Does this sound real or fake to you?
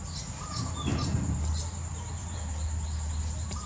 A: real